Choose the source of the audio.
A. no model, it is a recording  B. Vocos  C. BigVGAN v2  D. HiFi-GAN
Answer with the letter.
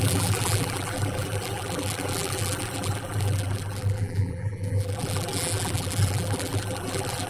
C